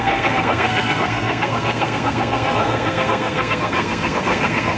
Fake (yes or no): yes